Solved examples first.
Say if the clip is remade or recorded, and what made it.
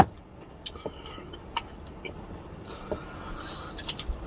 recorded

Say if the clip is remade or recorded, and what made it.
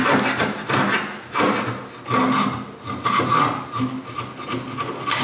recorded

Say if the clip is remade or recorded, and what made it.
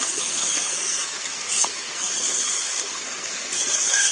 remade, codec, SNAC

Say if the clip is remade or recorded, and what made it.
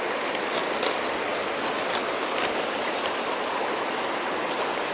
recorded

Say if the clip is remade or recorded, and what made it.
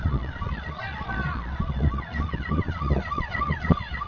remade, vocoder, Vocos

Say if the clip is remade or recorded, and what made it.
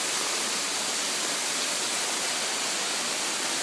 recorded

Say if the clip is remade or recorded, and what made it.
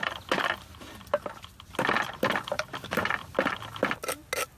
recorded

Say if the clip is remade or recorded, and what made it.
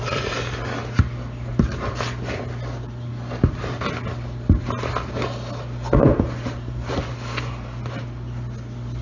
recorded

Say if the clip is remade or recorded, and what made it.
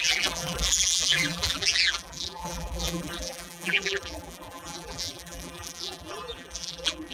remade, vocoder, BigVGAN v2